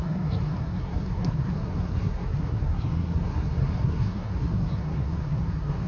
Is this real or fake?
fake